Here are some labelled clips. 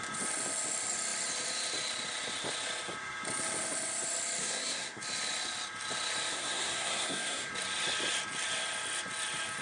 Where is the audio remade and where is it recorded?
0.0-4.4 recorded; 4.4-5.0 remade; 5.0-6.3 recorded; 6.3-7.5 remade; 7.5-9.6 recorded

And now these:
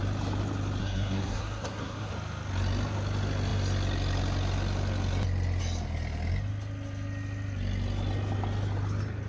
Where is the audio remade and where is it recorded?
0.0-0.8 recorded; 0.8-2.1 remade; 2.1-9.3 recorded

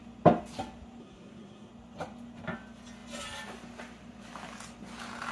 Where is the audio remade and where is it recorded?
0.0-1.0 recorded; 1.0-1.7 remade; 1.7-5.3 recorded